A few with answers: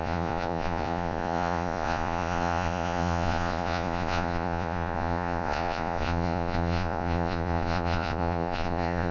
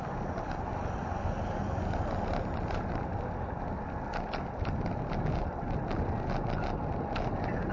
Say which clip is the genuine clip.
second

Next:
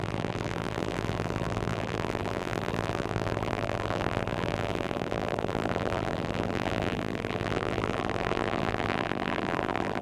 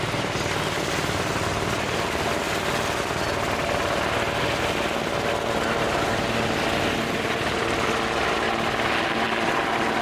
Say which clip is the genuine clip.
second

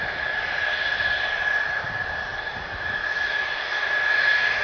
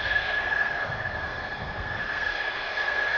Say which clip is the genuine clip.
first